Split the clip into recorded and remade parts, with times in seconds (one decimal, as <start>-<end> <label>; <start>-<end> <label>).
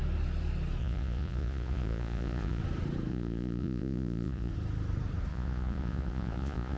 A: 0.0-0.8 recorded; 0.8-2.6 remade; 2.6-3.1 recorded; 3.1-4.5 remade; 4.5-5.3 recorded; 5.3-6.8 remade